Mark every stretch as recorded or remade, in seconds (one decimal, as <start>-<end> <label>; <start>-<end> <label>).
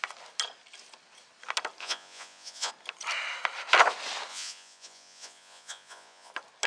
0.0-1.8 recorded; 1.8-2.7 remade; 2.7-4.3 recorded; 4.3-6.3 remade; 6.3-6.7 recorded